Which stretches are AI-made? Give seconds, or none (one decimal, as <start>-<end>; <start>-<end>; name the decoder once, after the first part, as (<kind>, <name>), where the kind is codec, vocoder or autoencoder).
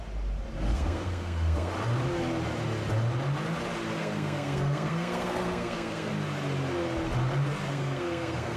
0.7-1.7 (codec, SNAC); 4.0-6.1; 7.7-8.6